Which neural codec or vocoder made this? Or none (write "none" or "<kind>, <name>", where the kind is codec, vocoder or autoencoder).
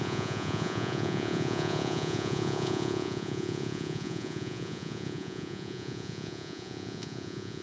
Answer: vocoder, Vocos